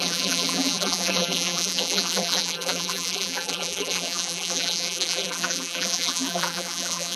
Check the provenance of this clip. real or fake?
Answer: fake